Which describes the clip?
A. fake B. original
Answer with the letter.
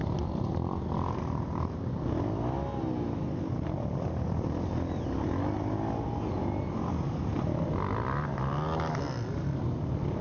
B